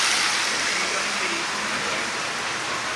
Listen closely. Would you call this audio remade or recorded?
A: recorded